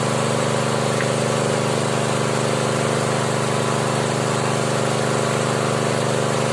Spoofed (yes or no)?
no